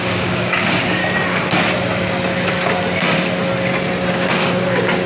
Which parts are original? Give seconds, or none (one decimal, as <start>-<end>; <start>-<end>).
1.0-4.1